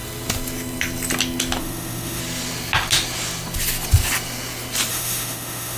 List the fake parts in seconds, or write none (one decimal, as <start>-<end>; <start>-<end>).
1.6-2.2; 4.9-5.8